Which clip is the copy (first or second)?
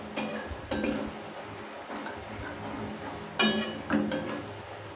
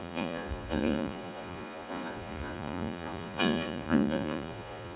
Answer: second